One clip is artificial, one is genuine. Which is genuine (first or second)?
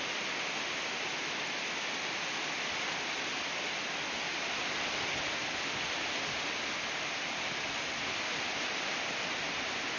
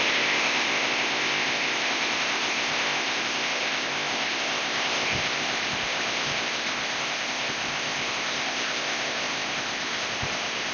first